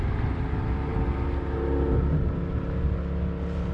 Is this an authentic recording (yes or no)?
yes